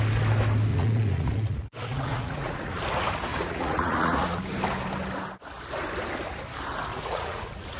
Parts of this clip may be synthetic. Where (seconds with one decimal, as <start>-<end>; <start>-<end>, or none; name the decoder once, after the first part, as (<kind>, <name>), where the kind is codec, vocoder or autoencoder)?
0.7-2.8 (vocoder, Vocos); 3.3-4.4; 6.9-7.8